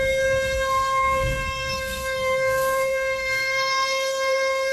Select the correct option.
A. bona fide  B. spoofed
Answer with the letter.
B